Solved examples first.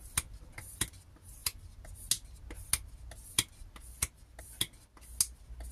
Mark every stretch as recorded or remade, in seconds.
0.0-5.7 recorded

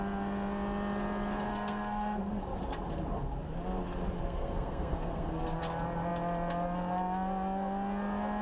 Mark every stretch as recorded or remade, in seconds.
0.0-1.5 recorded; 1.5-2.4 remade; 2.4-4.2 recorded; 4.2-5.6 remade; 5.6-8.4 recorded

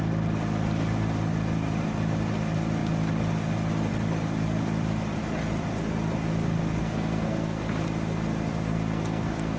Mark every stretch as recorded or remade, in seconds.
0.0-6.8 recorded; 6.8-7.6 remade; 7.6-8.5 recorded; 8.5-9.6 remade

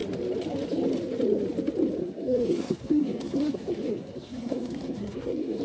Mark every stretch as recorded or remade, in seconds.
0.0-2.0 recorded; 2.0-5.6 remade

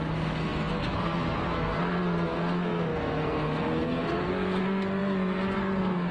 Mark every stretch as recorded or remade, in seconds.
0.0-6.1 remade